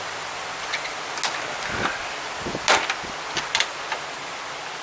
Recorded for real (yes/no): yes